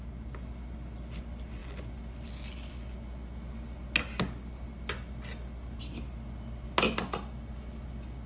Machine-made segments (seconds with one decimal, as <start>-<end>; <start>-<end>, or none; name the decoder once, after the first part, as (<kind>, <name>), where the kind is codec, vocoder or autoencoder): none